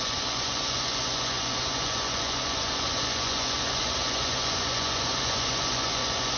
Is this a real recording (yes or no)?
no